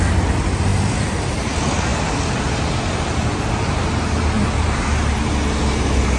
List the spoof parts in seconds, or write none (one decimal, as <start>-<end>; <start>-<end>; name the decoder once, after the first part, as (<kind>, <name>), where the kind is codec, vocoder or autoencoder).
none